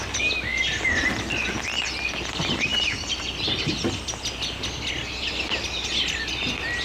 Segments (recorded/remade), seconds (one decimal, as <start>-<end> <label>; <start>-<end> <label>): 0.0-2.7 recorded; 2.7-3.7 remade; 3.7-6.8 recorded